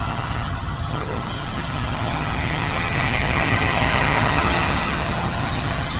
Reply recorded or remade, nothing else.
remade